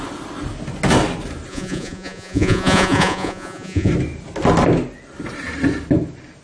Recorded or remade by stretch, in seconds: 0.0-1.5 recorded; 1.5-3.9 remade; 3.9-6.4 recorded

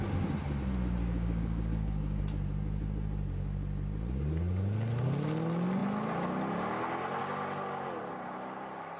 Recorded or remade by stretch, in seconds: 0.0-1.0 recorded; 1.0-2.2 remade; 2.2-9.0 recorded

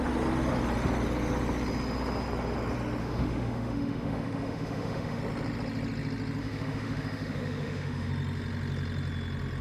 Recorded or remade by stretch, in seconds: 0.0-3.0 recorded; 3.0-5.2 remade; 5.2-6.4 recorded; 6.4-8.1 remade; 8.1-9.6 recorded

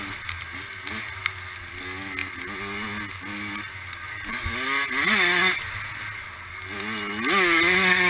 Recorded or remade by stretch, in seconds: 0.0-8.1 recorded

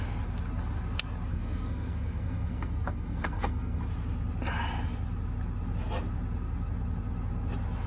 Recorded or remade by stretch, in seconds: 0.0-1.3 recorded; 1.3-3.8 remade; 3.8-7.9 recorded

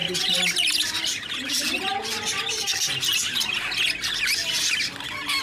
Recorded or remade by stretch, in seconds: 0.0-5.4 recorded